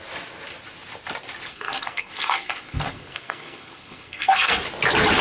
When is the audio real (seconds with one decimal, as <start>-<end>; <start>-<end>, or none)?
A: 0.0-1.5; 4.6-5.2